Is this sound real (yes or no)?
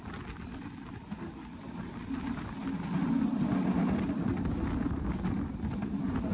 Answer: yes